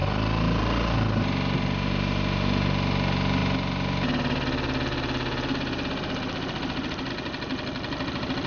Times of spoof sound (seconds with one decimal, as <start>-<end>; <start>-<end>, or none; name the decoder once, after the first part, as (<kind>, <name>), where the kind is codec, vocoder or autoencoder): none